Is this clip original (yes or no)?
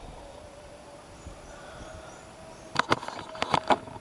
yes